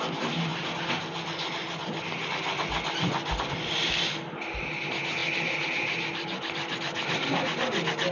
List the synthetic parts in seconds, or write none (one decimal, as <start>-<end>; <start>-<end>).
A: none